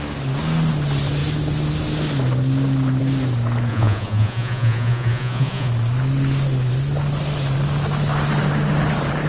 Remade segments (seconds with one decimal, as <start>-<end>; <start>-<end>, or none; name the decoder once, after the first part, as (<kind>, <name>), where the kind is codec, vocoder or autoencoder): 3.7-5.7 (vocoder, Vocos)